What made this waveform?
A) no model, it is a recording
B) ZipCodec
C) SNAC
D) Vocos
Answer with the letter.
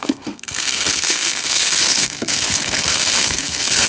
C